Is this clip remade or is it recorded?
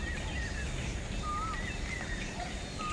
recorded